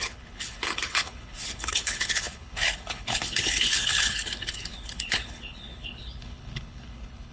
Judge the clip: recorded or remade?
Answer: remade